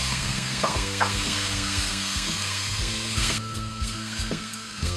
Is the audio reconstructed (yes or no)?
yes